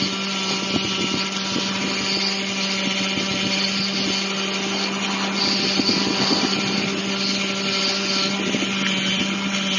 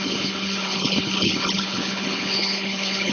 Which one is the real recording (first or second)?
first